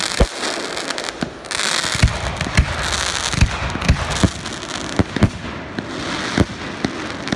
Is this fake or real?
real